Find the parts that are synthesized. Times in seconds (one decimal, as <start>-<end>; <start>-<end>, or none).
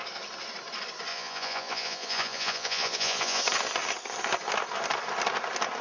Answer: 1.1-3.4